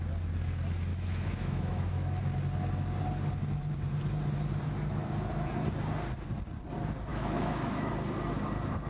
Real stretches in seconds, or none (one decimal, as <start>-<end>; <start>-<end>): 0.0-0.9; 2.2-7.1; 7.9-8.9